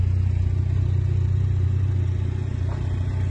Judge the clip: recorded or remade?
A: recorded